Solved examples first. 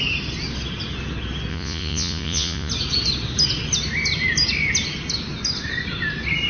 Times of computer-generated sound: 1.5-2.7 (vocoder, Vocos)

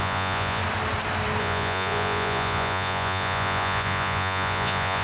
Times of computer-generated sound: 0.0-0.6 (vocoder, Vocos); 1.4-5.0

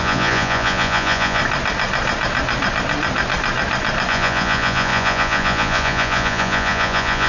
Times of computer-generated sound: 0.0-1.4 (vocoder, Vocos); 4.1-7.3

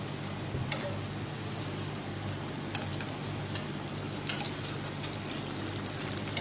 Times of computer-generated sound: none

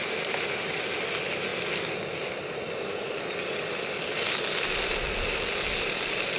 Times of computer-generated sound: none

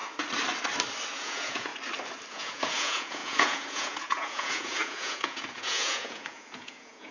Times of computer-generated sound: 1.1-1.7 (vocoder, Vocos); 2.3-7.1

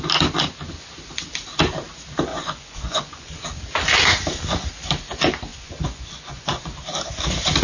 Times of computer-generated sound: 2.3-3.4 (vocoder, Vocos); 5.5-6.6

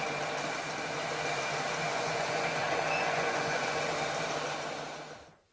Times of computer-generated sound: 1.9-3.8 (vocoder, Vocos)